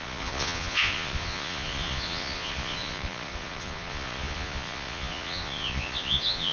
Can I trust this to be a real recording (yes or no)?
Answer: no